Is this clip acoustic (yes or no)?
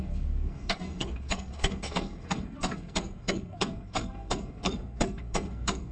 no